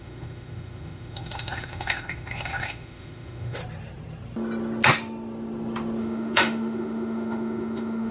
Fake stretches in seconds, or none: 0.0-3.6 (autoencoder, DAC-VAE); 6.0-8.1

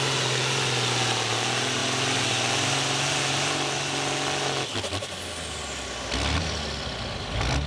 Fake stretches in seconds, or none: none

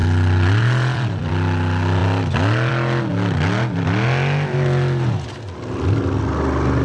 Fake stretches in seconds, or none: 0.0-1.3 (vocoder, BigVGAN v2)

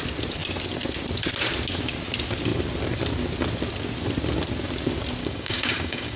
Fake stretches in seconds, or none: 5.2-6.2 (codec, DAC)